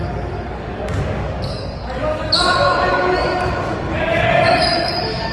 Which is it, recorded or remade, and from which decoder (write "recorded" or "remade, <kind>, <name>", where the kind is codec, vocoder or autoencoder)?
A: remade, codec, DAC